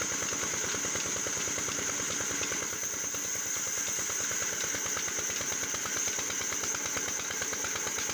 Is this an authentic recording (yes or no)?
yes